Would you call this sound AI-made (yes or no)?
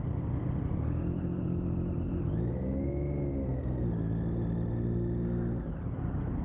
no